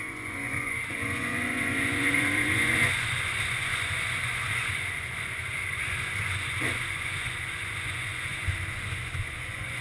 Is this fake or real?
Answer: fake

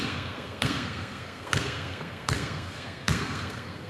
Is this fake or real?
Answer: fake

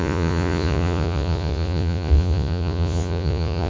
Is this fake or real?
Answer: fake